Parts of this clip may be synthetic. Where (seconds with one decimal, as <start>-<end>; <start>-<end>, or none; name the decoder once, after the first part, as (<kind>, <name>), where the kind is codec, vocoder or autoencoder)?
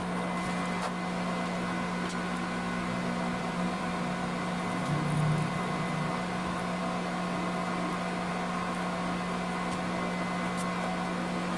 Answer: none